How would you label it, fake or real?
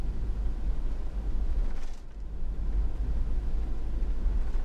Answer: real